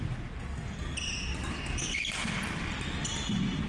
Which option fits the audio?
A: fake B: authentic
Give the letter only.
B